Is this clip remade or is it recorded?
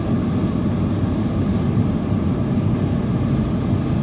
recorded